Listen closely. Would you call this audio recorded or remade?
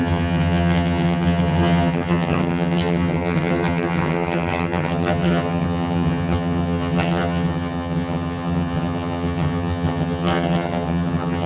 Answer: remade